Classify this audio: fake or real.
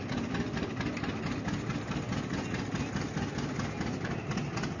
real